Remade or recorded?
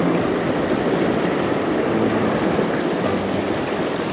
recorded